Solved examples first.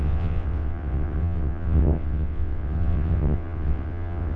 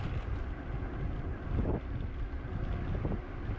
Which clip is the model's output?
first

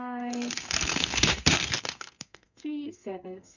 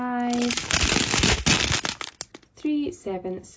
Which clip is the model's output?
first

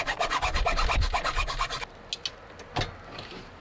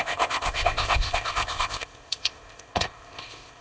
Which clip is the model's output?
second